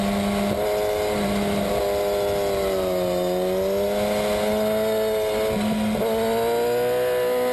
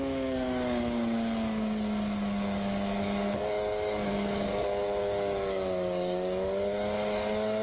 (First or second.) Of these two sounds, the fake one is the second